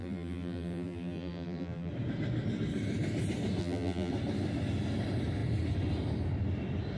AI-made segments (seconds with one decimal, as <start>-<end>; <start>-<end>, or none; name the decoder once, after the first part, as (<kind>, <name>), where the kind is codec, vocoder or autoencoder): 0.0-1.9 (vocoder, BigVGAN v2); 3.6-4.1